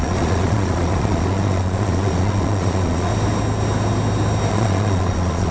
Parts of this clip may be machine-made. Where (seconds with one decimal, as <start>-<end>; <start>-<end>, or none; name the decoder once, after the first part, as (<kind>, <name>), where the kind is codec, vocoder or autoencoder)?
0.0-3.1 (vocoder, Vocos); 4.5-5.5